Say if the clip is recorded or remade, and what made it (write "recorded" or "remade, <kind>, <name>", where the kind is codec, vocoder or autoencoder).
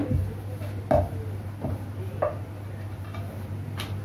recorded